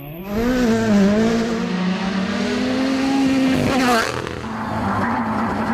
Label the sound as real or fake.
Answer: real